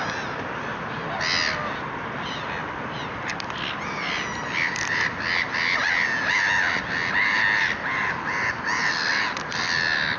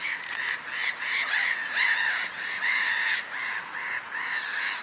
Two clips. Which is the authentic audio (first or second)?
first